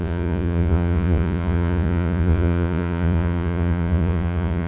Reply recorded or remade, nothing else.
remade